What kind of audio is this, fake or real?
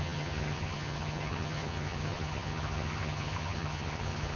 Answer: fake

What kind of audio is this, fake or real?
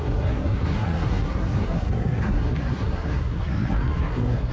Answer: fake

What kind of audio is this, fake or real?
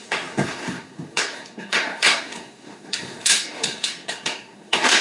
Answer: fake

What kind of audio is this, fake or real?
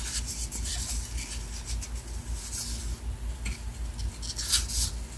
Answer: real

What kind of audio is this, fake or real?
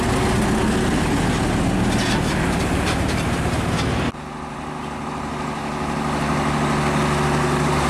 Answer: real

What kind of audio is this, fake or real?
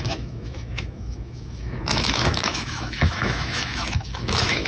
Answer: fake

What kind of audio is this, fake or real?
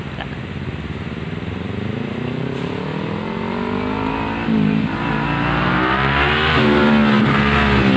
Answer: real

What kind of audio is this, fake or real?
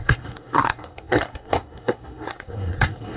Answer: fake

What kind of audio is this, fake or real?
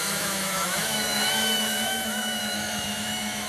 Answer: fake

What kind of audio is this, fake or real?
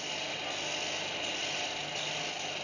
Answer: real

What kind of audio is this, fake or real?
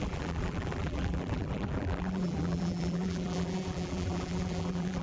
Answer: fake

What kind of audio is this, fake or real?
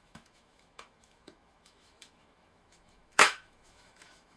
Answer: fake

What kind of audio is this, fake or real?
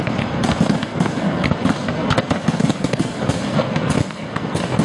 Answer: fake